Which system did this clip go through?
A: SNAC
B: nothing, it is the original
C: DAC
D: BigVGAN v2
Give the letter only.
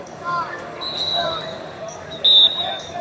C